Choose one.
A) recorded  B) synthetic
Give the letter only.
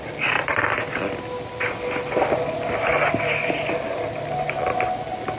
A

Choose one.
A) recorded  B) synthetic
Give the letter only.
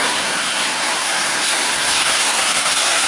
B